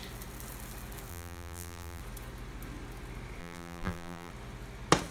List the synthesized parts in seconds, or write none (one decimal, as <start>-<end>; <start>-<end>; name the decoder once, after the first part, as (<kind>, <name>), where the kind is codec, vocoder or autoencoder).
1.1-2.0 (vocoder, BigVGAN v2); 3.4-4.3